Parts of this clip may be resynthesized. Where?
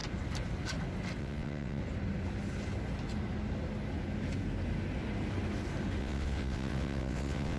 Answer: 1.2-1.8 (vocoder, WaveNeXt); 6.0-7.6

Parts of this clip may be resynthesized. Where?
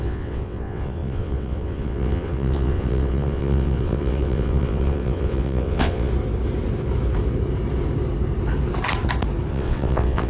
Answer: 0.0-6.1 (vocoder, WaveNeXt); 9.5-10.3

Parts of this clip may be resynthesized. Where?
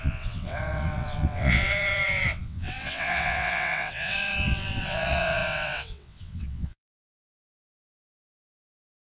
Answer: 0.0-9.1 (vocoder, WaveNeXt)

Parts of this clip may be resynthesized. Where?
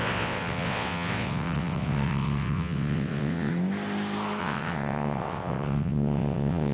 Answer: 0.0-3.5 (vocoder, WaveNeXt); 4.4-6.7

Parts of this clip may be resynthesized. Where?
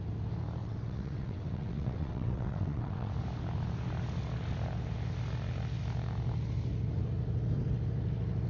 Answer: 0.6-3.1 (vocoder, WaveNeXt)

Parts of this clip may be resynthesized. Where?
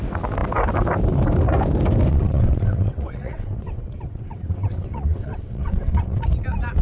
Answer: 2.1-6.2 (vocoder, WaveNeXt)